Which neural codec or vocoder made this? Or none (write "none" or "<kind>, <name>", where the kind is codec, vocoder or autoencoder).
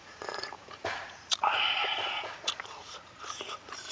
vocoder, Vocos